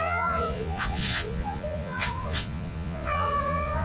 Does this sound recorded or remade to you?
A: remade